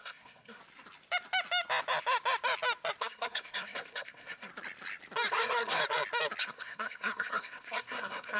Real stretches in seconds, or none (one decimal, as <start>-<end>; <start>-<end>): 0.6-3.0; 4.5-5.3; 5.8-6.4